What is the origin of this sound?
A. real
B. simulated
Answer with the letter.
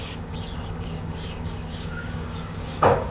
B